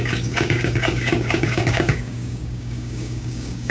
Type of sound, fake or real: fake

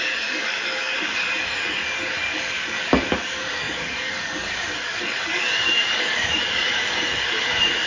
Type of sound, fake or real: fake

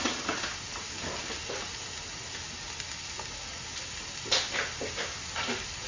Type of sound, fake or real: real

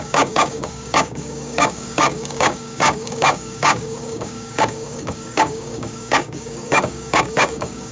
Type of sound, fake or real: fake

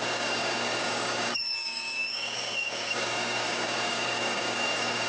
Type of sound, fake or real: fake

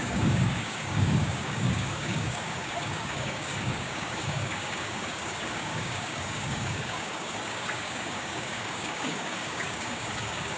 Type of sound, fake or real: fake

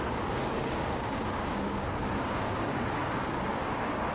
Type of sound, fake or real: fake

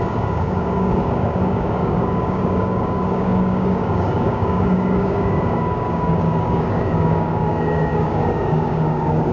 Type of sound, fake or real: fake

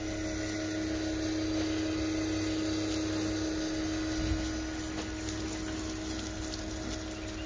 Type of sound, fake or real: real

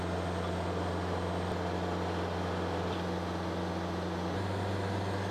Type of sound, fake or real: real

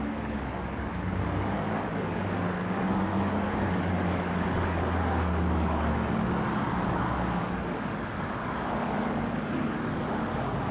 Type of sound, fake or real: fake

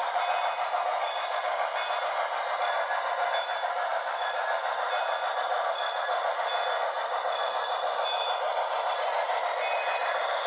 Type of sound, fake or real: real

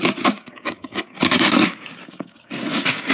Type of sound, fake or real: fake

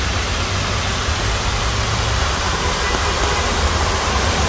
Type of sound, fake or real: real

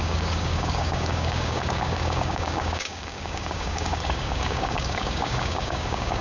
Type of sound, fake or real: fake